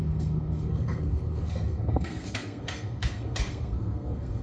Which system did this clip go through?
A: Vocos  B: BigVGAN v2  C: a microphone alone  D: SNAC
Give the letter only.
D